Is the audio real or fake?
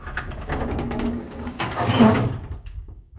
fake